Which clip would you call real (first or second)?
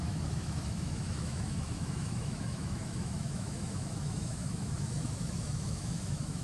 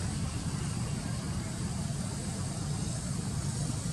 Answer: second